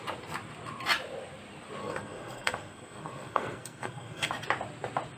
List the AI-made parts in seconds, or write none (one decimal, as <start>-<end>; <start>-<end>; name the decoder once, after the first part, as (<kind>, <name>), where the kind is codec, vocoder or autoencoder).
1.8-4.3 (codec, SNAC)